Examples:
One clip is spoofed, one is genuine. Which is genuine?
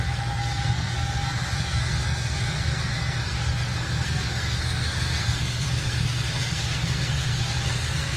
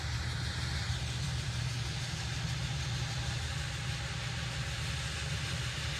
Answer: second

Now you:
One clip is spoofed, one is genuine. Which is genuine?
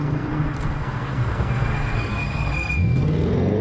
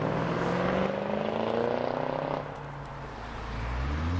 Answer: second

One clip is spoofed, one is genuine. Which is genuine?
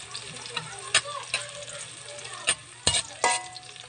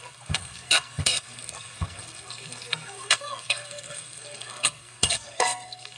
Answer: first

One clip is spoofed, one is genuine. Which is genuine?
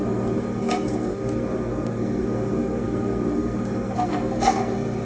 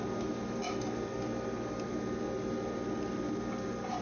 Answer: second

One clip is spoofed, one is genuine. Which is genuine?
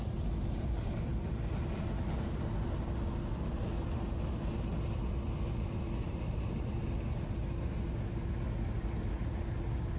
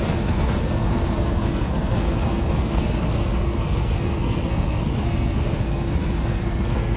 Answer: first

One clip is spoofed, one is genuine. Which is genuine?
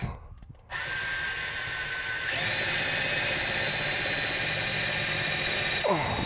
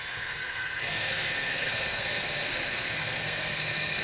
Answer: first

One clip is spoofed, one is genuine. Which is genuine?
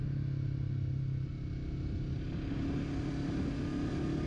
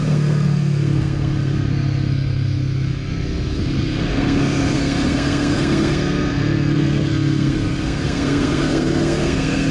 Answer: first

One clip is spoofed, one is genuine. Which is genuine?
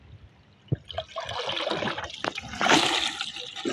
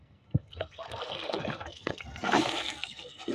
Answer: first